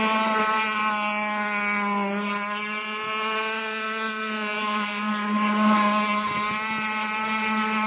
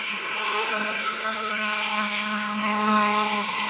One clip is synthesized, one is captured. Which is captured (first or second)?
first